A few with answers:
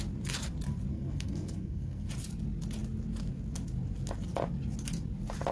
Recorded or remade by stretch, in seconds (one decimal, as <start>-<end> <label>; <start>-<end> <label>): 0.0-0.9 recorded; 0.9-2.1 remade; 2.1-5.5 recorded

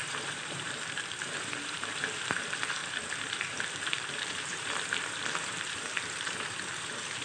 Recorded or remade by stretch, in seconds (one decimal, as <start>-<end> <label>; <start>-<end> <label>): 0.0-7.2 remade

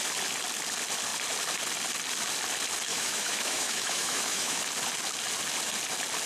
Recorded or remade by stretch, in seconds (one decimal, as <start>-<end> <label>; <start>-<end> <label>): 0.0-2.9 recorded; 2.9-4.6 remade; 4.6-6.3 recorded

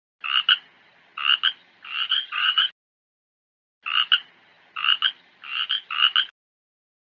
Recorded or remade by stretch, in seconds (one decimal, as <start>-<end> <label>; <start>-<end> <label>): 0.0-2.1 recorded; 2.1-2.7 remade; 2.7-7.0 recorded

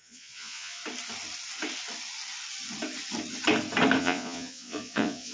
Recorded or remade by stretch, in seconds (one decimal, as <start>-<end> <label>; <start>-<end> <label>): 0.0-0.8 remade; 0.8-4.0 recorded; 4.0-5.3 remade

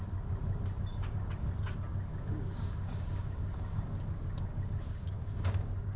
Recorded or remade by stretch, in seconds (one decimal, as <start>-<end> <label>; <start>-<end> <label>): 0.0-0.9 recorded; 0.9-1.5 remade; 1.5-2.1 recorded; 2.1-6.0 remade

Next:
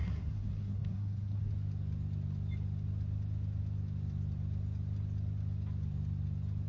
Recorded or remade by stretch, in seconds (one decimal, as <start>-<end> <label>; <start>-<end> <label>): 0.0-1.5 remade; 1.5-6.7 recorded